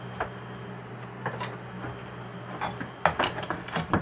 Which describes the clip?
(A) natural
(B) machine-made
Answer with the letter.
A